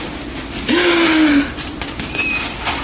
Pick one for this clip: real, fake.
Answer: real